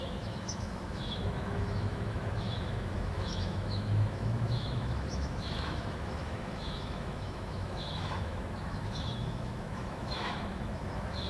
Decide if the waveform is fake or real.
fake